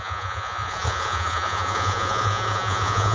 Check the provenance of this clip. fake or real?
fake